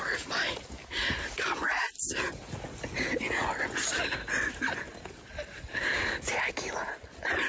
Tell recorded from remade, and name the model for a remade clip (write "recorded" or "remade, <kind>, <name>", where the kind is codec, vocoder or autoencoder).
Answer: recorded